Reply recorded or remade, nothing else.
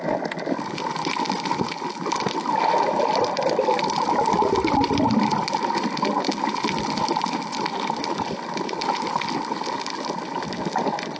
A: recorded